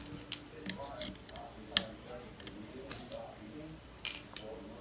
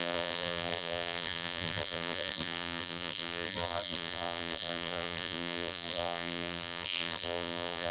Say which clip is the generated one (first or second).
second